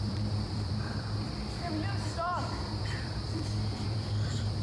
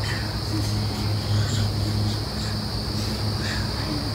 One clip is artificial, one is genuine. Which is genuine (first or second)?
second